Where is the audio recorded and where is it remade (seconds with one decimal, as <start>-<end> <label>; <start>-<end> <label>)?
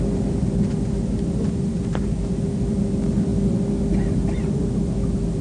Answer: 0.0-5.4 recorded